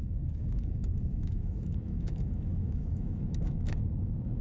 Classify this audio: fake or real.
fake